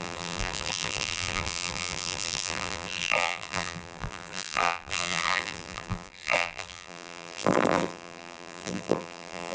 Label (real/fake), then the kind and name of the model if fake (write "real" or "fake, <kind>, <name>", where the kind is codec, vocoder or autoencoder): fake, vocoder, BigVGAN v2